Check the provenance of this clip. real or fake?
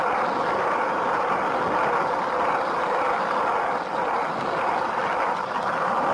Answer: real